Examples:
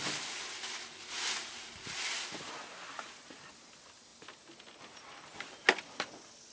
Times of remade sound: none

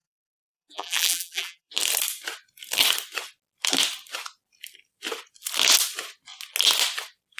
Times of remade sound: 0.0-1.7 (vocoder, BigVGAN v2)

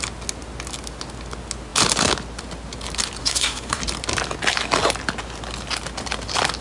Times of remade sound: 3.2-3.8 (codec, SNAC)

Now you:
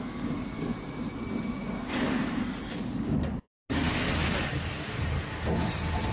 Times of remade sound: none

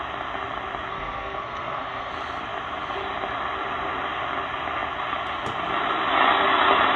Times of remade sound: 0.9-2.1 (codec, SNAC)